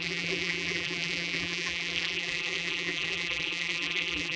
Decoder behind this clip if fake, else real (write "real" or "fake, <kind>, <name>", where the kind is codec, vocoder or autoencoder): fake, vocoder, BigVGAN v2